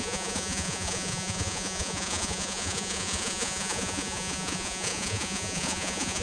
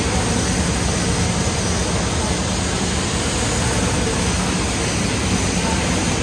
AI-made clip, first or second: first